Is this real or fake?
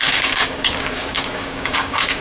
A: fake